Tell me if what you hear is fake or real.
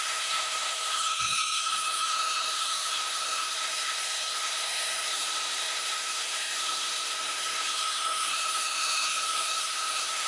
fake